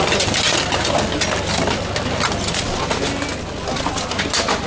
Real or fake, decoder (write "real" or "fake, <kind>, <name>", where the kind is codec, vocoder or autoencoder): real